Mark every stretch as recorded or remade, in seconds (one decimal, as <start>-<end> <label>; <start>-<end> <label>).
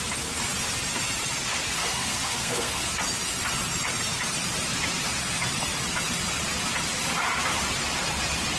0.0-1.8 recorded; 1.8-2.9 remade; 2.9-8.6 recorded